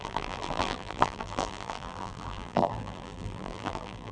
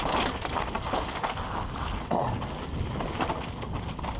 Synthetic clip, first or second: first